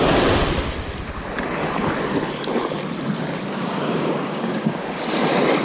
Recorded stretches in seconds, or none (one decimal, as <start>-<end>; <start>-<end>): 0.0-3.6; 5.0-5.6

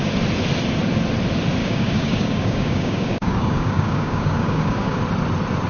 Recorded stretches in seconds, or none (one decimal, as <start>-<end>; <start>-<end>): 0.0-1.6; 5.0-5.7

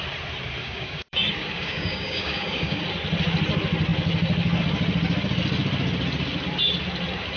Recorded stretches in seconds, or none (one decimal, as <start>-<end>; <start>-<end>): 0.0-0.6; 2.8-7.4

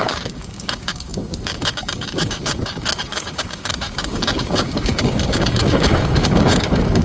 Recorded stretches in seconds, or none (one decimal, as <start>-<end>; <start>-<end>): none

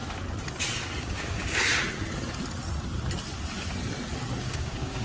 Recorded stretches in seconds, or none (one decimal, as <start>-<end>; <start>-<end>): 0.0-1.0; 1.7-4.4

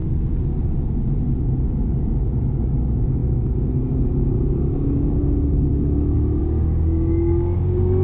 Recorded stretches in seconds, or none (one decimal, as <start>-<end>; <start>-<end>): 0.0-2.6